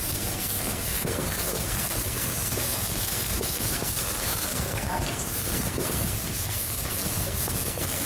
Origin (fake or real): fake